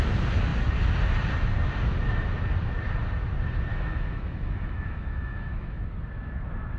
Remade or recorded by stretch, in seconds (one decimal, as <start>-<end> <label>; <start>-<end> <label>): 0.0-3.7 recorded; 3.7-5.8 remade; 5.8-6.8 recorded